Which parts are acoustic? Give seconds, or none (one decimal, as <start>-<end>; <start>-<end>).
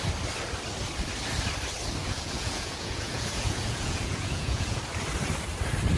0.0-2.0; 4.8-6.0